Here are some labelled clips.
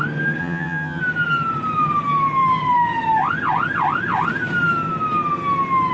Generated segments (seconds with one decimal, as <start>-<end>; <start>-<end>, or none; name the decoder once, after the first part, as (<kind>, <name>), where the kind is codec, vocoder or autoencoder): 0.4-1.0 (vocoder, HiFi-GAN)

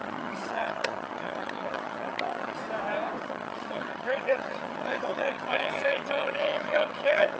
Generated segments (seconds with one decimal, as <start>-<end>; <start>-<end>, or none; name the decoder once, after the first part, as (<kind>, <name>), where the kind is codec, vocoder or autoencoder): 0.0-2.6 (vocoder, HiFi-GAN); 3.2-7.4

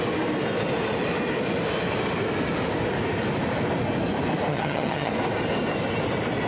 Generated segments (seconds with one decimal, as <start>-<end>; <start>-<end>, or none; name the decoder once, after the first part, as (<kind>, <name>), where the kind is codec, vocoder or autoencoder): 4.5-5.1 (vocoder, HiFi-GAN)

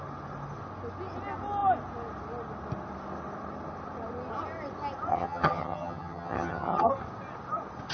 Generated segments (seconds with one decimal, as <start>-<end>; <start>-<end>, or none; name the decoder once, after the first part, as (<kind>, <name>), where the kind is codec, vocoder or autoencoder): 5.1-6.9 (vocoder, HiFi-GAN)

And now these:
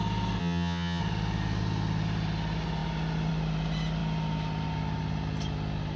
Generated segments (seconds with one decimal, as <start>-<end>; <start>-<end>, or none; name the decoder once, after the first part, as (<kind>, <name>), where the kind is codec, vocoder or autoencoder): 0.4-1.0 (vocoder, HiFi-GAN)

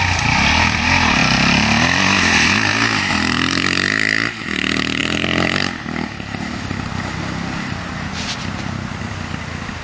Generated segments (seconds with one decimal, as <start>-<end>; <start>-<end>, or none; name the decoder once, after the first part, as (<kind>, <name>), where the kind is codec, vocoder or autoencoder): none

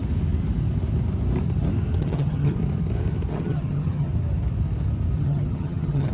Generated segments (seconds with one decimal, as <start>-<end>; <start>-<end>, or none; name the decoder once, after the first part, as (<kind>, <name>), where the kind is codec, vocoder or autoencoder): 2.0-2.6 (vocoder, HiFi-GAN); 3.3-4.1; 5.2-6.1

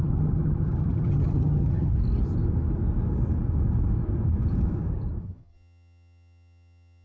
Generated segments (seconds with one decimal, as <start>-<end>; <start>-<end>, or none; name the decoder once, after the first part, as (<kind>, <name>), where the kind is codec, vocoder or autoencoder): 0.0-1.9 (vocoder, HiFi-GAN); 5.2-7.0